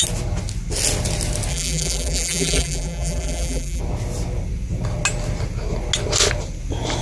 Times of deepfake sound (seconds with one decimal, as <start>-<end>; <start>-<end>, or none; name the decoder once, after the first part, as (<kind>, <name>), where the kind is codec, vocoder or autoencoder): 1.5-3.8 (vocoder, BigVGAN v2)